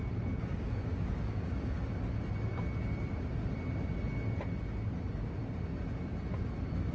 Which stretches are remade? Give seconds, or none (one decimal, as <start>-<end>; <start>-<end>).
0.4-1.8